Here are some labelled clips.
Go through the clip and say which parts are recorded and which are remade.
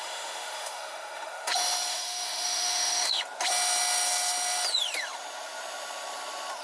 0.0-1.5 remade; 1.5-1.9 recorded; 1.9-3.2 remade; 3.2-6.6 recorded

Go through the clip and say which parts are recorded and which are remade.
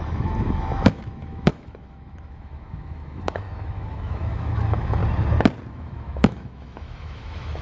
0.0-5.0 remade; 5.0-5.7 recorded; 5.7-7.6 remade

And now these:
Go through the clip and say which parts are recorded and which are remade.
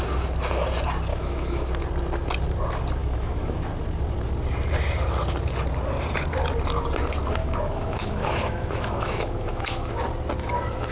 0.0-1.1 recorded; 1.1-1.7 remade; 1.7-3.0 recorded; 3.0-3.6 remade; 3.6-7.4 recorded; 7.4-9.9 remade; 9.9-10.9 recorded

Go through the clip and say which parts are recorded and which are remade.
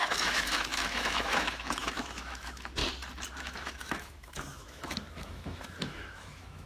0.0-2.8 remade; 2.8-3.3 recorded; 3.3-6.7 remade